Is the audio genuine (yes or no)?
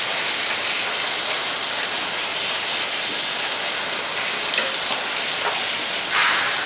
yes